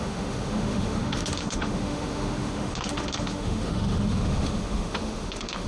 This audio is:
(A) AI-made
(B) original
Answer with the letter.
A